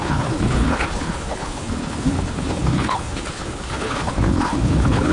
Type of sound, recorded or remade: remade